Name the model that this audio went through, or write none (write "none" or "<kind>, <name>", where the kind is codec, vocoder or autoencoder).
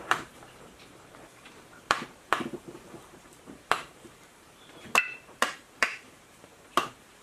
vocoder, BigVGAN v2